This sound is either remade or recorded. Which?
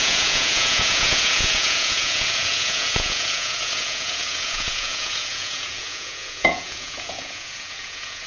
remade